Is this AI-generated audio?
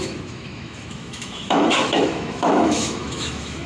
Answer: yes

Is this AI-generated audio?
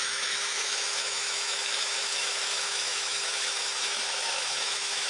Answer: yes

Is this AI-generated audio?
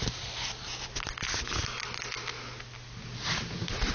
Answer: no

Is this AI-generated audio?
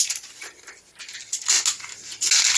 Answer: no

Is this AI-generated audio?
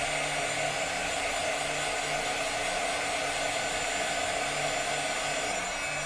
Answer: no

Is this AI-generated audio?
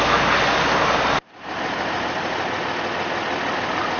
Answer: no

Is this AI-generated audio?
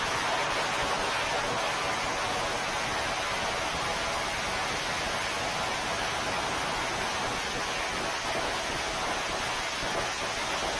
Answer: no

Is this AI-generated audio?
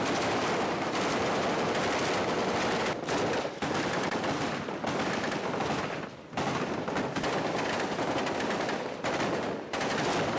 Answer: no